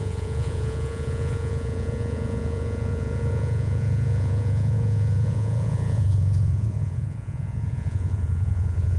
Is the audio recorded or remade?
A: remade